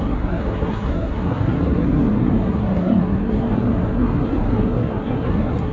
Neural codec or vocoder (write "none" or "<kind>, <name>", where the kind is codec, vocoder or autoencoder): codec, SNAC